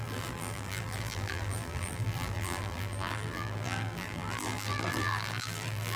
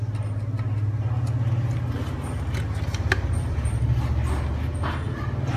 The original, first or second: second